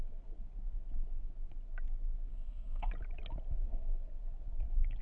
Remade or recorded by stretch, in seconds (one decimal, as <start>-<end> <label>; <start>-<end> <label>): 0.0-2.3 recorded; 2.3-2.9 remade; 2.9-5.0 recorded